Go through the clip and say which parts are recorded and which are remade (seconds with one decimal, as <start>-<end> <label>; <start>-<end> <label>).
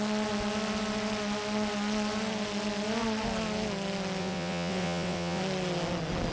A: 0.0-4.2 recorded; 4.2-5.4 remade; 5.4-6.3 recorded